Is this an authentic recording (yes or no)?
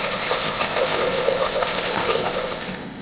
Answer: no